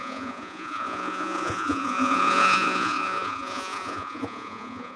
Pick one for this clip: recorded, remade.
remade